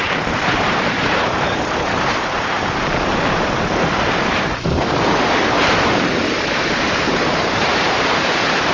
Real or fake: fake